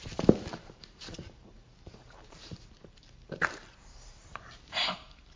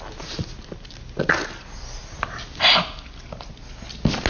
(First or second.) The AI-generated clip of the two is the first